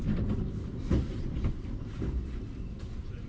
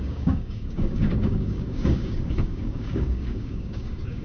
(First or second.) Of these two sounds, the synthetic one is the second